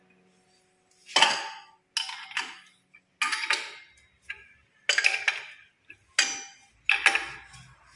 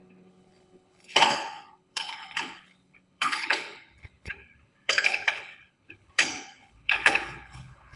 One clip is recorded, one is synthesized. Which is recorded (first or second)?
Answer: first